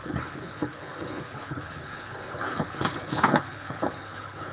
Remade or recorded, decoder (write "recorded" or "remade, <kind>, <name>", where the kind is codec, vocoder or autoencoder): remade, codec, HILCodec